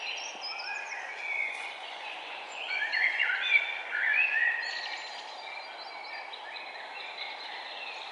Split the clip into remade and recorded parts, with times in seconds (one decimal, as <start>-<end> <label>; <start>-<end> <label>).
0.0-0.7 recorded; 0.7-4.4 remade; 4.4-8.1 recorded